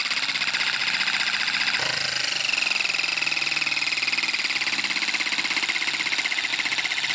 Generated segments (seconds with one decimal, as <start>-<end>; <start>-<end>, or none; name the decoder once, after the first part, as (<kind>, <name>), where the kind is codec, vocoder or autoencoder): none

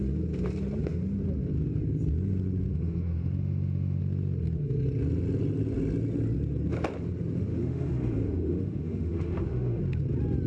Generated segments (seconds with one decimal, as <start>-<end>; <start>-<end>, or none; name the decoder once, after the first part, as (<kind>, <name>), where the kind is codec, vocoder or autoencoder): 2.7-4.0 (autoencoder, DAC-VAE); 7.5-9.8

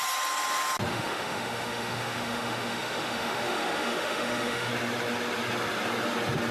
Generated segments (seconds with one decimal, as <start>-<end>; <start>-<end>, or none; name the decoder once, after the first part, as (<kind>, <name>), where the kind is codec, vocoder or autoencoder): 0.9-4.7 (autoencoder, DAC-VAE)

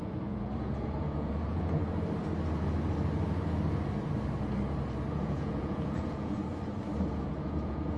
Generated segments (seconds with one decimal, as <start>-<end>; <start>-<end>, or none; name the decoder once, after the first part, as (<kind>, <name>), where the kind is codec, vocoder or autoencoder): 0.0-1.8 (vocoder, Vocos); 5.1-6.5; 7.1-8.0